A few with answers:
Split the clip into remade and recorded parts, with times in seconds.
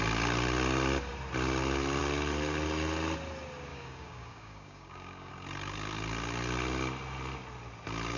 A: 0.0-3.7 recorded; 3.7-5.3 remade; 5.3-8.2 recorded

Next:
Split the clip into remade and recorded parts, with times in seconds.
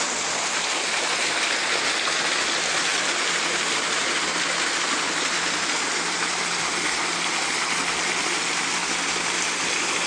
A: 0.0-10.1 recorded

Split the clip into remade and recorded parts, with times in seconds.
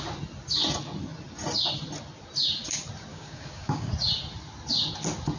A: 0.0-3.1 recorded; 3.1-3.9 remade; 3.9-5.4 recorded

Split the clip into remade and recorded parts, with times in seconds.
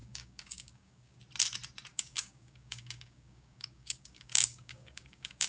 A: 0.0-1.2 remade; 1.2-1.9 recorded; 1.9-5.5 remade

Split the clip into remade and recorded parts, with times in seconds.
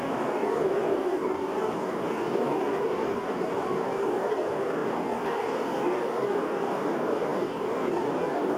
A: 0.0-8.6 remade